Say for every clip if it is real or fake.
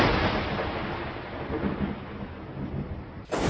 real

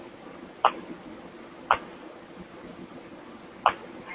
real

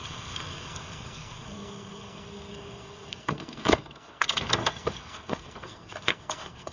fake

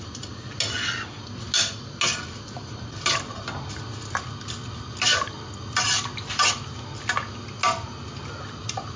real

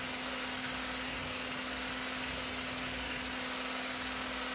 real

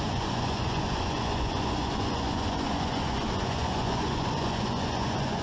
fake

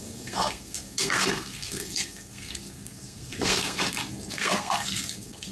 fake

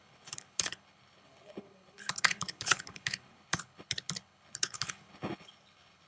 fake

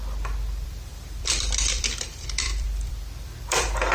fake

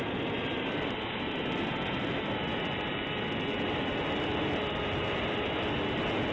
real